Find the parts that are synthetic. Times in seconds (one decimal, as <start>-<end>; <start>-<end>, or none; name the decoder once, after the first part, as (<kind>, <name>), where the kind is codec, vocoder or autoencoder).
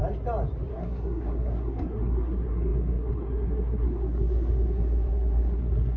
0.7-6.0 (codec, SNAC)